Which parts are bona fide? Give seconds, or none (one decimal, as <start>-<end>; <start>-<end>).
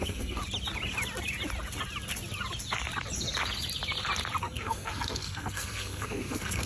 0.4-4.4